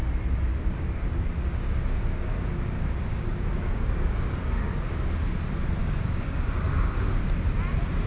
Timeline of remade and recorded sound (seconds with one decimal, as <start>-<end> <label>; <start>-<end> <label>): 0.0-0.5 recorded; 0.5-2.2 remade; 2.2-3.0 recorded; 3.0-5.0 remade; 5.0-5.8 recorded; 5.8-7.0 remade; 7.0-8.1 recorded